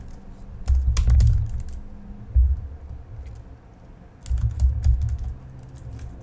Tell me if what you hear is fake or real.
real